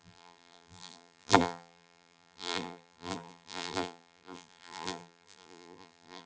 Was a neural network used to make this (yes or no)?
yes